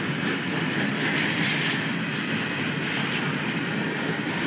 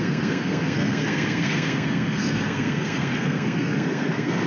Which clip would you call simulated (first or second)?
second